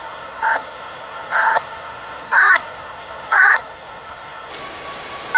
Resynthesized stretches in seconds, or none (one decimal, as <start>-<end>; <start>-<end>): 0.0-4.5